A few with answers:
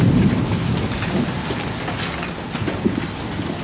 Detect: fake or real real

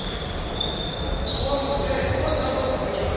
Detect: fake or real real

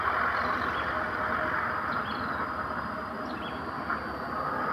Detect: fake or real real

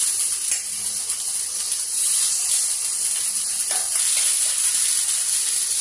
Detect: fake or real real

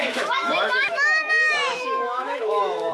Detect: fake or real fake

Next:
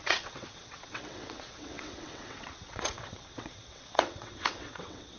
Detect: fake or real fake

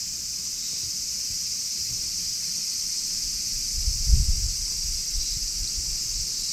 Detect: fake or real real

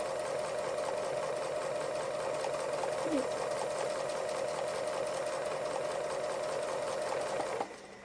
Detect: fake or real real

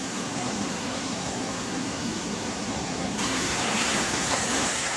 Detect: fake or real fake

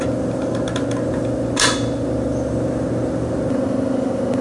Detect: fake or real real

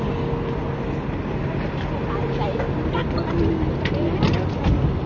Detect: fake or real real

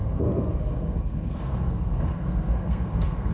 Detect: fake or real fake